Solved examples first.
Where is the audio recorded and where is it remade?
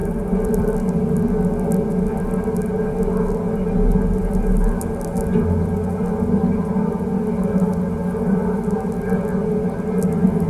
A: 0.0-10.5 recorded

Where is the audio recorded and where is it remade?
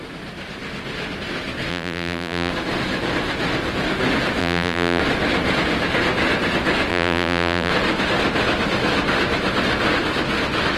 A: 0.0-1.7 recorded; 1.7-2.5 remade; 2.5-4.4 recorded; 4.4-5.0 remade; 5.0-6.9 recorded; 6.9-7.7 remade; 7.7-10.8 recorded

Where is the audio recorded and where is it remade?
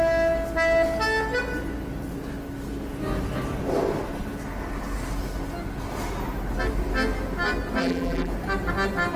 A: 0.0-7.8 recorded; 7.8-8.3 remade; 8.3-9.2 recorded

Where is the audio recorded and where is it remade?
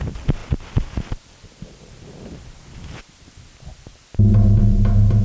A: 0.0-3.9 recorded; 3.9-4.6 remade; 4.6-5.2 recorded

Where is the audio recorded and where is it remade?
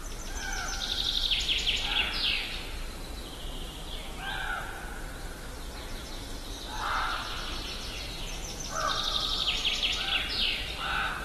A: 0.0-11.2 recorded